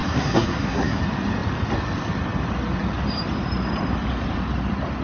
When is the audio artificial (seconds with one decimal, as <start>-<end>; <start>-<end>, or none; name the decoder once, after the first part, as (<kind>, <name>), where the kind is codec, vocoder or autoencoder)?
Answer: 0.0-1.0 (codec, SNAC)